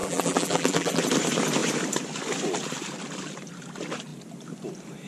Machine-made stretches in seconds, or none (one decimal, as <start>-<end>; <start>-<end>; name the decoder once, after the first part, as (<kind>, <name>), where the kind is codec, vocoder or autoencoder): 0.0-1.0 (vocoder, BigVGAN v2)